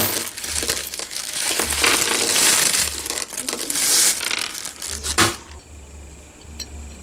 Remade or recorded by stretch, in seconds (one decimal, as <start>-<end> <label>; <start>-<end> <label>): 0.0-0.8 recorded; 0.8-1.6 remade; 1.6-7.0 recorded